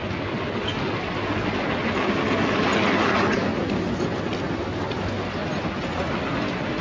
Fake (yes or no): no